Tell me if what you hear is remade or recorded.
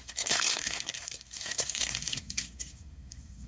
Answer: remade